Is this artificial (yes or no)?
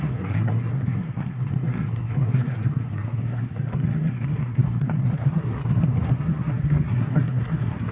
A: yes